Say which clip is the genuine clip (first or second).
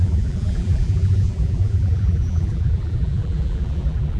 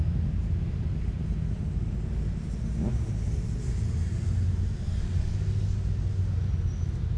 second